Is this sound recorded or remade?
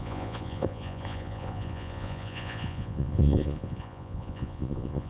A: remade